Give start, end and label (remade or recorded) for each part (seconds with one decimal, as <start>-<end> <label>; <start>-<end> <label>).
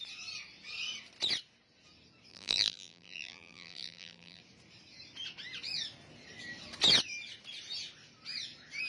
0.0-2.3 recorded; 2.3-4.4 remade; 4.4-8.9 recorded